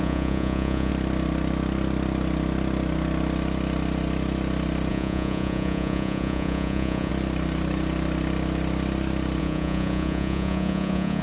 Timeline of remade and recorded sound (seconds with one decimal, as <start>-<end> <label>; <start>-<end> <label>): 0.0-0.9 remade; 0.9-4.9 recorded; 4.9-7.1 remade; 7.1-9.4 recorded; 9.4-11.2 remade